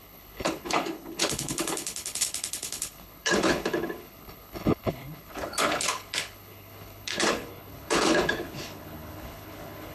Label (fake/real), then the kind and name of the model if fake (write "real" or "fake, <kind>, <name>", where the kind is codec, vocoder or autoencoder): fake, codec, HILCodec